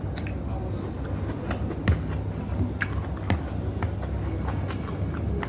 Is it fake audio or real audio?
real